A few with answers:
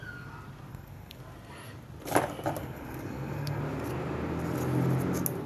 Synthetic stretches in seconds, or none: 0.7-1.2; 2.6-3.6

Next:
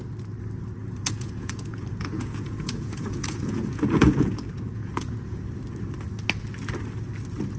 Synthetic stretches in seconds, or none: 0.8-5.4

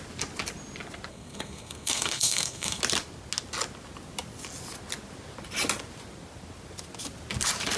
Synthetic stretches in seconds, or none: 1.1-2.8